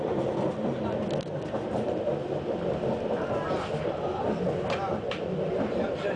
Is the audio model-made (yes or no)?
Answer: no